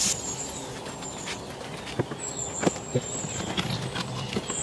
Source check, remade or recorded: recorded